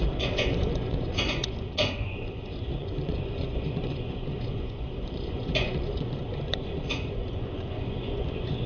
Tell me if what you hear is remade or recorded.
remade